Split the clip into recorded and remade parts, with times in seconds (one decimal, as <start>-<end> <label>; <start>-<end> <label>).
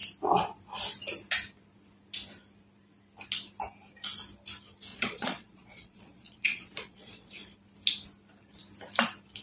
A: 0.0-4.9 recorded; 4.9-7.3 remade; 7.3-9.4 recorded